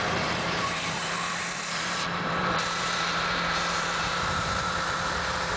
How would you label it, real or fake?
fake